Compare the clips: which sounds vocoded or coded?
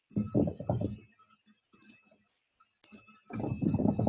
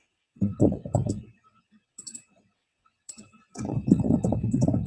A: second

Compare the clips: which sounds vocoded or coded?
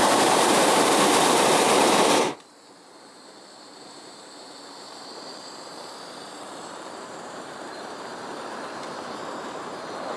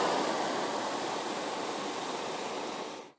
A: first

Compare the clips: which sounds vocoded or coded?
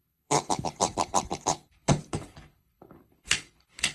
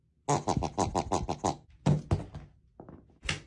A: first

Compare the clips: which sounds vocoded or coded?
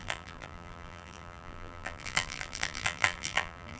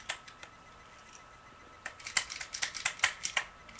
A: first